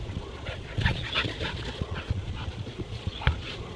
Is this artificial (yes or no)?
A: yes